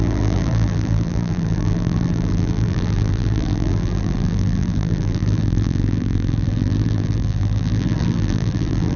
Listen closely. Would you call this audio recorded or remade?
remade